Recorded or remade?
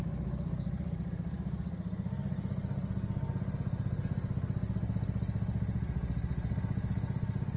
recorded